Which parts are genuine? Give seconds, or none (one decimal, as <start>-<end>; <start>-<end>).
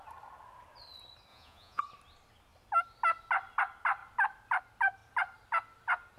0.0-1.3; 1.8-6.2